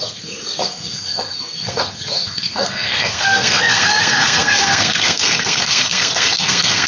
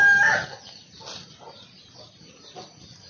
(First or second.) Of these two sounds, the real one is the second